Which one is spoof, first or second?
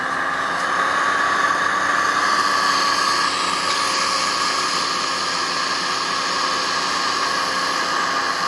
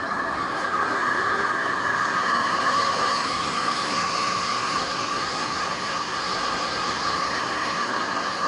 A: second